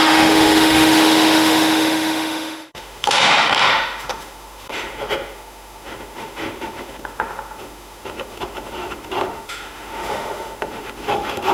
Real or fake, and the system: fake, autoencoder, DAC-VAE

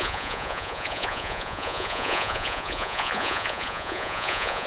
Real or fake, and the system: fake, vocoder, Vocos